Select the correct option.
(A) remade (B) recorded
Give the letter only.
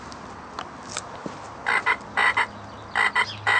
B